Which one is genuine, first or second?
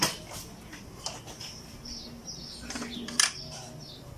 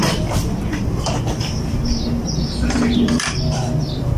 first